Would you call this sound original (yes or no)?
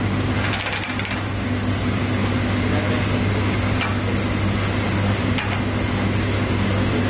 yes